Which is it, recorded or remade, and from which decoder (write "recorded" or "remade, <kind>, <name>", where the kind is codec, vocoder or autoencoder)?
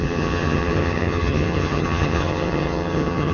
remade, vocoder, HiFi-GAN